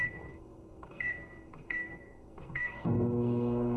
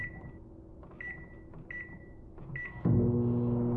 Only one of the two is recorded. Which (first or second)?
second